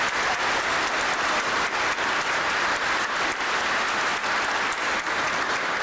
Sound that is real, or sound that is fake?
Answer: real